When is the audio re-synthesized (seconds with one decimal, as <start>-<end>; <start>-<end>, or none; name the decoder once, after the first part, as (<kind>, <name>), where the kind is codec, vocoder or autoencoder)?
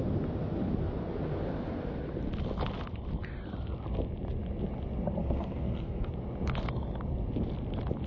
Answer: 5.2-6.1 (codec, SNAC)